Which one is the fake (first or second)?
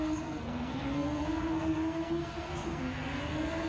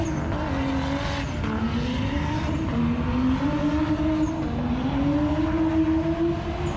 first